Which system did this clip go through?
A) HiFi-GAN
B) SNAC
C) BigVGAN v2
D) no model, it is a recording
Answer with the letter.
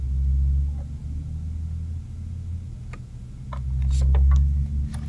D